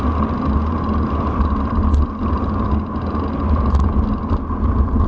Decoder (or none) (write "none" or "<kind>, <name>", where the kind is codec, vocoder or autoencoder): none